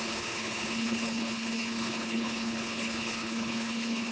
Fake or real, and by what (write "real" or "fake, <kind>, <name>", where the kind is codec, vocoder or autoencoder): fake, codec, HILCodec